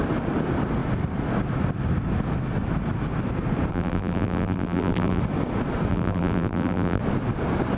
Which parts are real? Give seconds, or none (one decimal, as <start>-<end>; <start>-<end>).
0.0-3.7; 5.2-5.9; 7.0-7.8